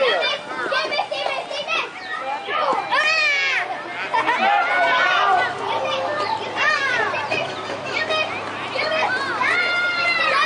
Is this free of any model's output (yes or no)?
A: yes